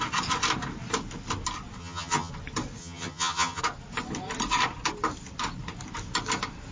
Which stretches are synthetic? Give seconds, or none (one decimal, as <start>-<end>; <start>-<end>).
1.8-2.3; 2.8-3.6